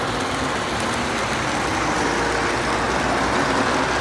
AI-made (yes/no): no